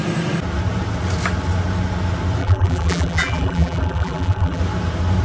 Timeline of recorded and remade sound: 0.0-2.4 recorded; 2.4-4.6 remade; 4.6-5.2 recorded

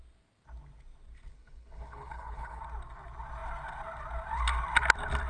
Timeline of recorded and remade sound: 0.0-1.3 recorded; 1.3-2.6 remade; 2.6-5.3 recorded